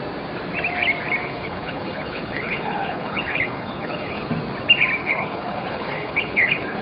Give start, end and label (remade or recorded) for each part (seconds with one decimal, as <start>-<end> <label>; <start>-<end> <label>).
0.0-1.2 recorded; 1.2-4.3 remade; 4.3-5.0 recorded; 5.0-6.8 remade